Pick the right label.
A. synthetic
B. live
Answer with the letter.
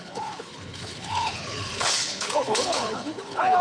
A